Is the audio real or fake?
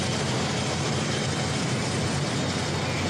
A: real